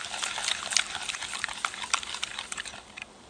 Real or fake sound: real